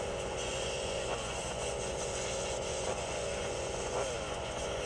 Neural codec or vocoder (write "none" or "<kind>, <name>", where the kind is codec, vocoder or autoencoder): vocoder, Vocos